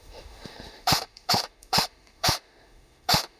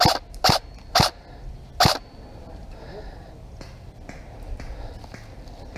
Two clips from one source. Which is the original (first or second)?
second